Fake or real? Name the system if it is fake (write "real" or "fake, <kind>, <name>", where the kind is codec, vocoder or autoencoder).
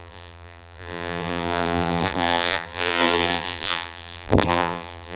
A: fake, vocoder, BigVGAN v2